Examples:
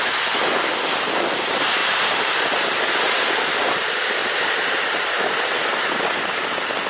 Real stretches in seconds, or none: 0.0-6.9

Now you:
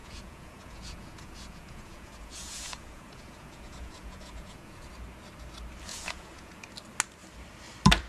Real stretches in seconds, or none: 4.9-5.9; 6.6-8.1